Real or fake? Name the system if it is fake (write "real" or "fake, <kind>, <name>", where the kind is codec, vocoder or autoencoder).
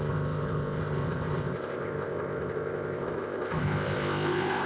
fake, codec, ZipCodec